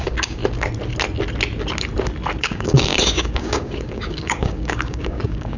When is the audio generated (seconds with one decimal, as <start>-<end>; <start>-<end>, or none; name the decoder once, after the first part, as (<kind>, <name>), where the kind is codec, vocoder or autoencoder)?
0.0-0.4 (codec, DAC); 2.4-5.6